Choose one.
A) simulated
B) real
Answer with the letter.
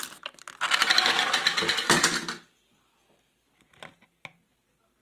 B